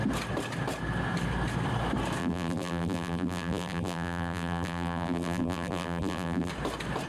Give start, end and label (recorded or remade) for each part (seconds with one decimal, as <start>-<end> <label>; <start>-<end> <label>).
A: 0.0-2.2 recorded; 2.2-6.5 remade; 6.5-7.1 recorded